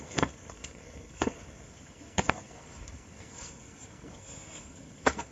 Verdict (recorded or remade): remade